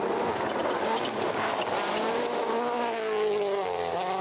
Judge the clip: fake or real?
real